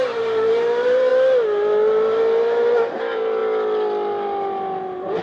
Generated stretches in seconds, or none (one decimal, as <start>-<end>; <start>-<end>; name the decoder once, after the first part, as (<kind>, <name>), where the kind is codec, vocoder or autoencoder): 0.0-1.1 (vocoder, BigVGAN v2); 2.8-3.4